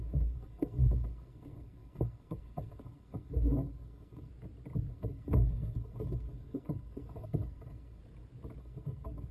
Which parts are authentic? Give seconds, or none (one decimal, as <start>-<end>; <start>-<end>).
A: 4.3-4.9; 8.0-8.6